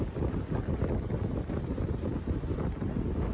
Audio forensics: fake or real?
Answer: real